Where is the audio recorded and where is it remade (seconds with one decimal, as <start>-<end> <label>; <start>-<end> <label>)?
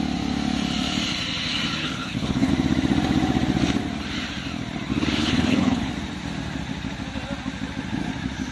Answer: 0.0-1.8 recorded; 1.8-2.5 remade; 2.5-5.2 recorded; 5.2-5.9 remade; 5.9-8.5 recorded